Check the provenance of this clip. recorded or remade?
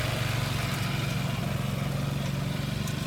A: recorded